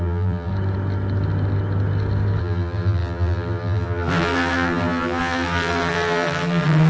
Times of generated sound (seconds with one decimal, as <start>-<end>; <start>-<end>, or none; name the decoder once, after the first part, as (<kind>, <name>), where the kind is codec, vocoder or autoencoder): 0.0-0.5 (vocoder, BigVGAN v2); 2.4-6.9